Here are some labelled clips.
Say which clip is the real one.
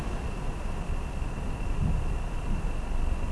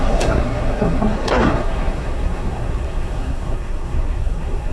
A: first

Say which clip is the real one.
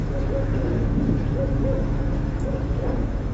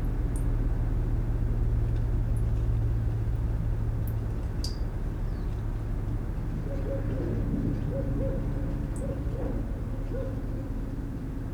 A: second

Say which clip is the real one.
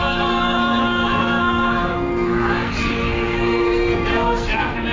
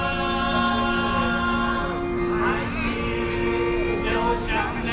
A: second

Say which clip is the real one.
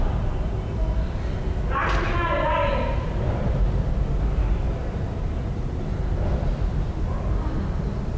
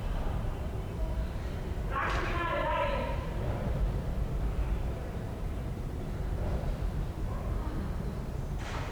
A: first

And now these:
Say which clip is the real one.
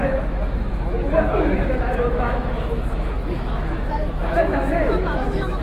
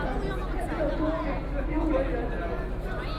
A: second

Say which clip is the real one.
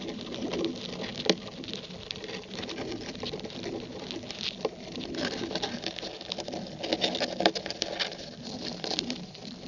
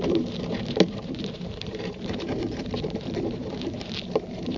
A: first